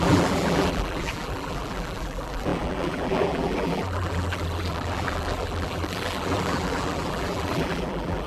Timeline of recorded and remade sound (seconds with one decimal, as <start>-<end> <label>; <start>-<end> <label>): 0.0-8.3 remade